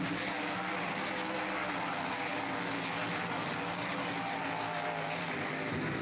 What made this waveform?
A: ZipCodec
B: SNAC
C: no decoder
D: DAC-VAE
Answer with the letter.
C